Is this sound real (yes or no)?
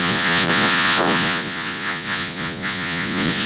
no